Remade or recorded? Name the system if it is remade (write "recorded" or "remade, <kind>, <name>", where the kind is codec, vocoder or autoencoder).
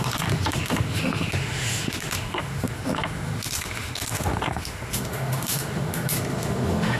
remade, autoencoder, DAC-VAE